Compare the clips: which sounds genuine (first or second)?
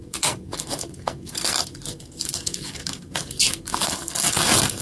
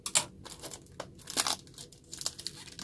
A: second